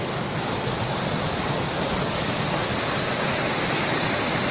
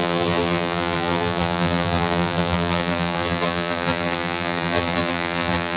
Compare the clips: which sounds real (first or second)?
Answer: first